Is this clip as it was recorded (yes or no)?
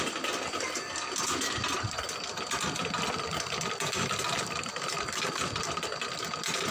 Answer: yes